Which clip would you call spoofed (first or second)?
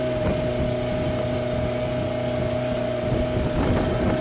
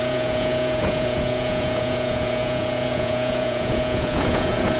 second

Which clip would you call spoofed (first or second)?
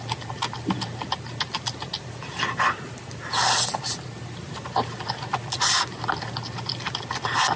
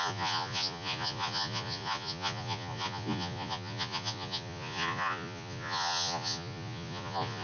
second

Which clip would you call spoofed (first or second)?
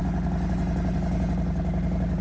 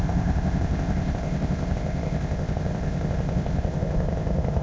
second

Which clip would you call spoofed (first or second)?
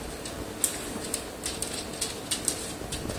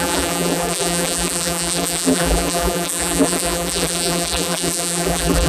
second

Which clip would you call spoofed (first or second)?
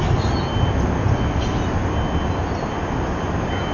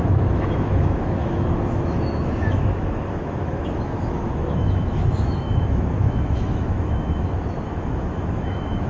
second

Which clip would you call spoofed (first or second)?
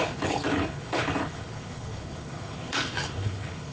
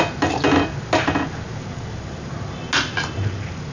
first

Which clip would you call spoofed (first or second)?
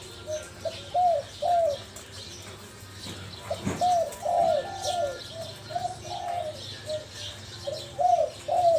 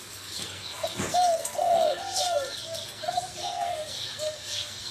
second